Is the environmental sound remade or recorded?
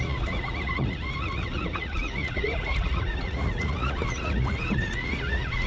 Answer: remade